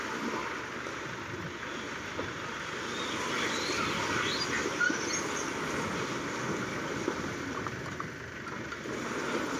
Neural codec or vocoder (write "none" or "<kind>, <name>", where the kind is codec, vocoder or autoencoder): none